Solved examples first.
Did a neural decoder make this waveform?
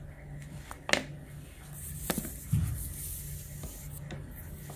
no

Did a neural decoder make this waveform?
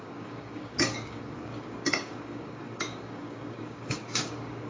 yes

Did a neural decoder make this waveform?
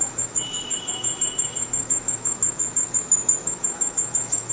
yes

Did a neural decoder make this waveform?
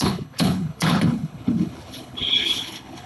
yes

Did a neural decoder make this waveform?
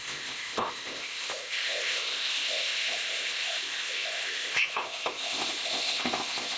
yes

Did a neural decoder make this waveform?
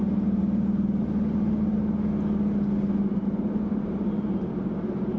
no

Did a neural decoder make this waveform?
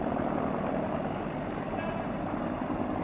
no